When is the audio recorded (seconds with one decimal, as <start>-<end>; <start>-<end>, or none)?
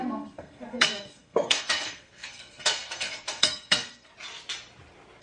4.1-5.2